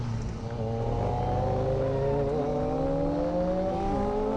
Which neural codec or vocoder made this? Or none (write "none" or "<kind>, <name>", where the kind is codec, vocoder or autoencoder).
none